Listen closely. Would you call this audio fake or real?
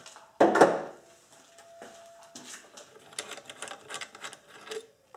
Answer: real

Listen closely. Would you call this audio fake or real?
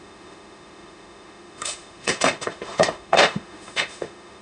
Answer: fake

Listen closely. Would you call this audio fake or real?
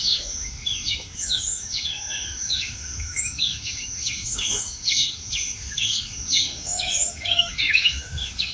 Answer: fake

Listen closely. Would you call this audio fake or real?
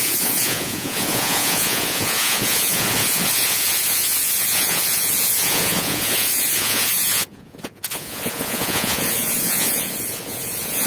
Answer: fake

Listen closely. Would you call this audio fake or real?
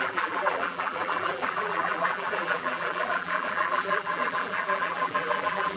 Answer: fake